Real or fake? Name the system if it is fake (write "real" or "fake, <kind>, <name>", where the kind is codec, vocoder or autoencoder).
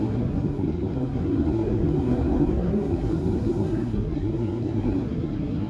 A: fake, codec, SNAC